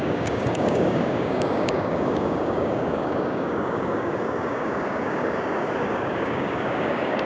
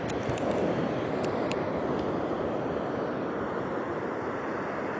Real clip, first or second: second